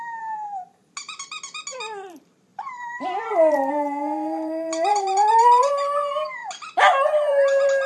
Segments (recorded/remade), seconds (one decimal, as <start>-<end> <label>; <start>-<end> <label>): 0.0-0.8 remade; 0.8-2.1 recorded; 2.1-6.4 remade; 6.4-7.1 recorded; 7.1-7.9 remade